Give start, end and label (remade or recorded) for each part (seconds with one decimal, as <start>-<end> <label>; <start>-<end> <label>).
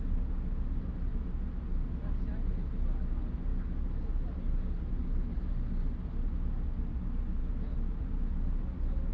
0.0-7.4 recorded; 7.4-7.9 remade; 7.9-9.1 recorded